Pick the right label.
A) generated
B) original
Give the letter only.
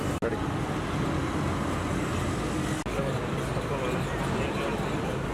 B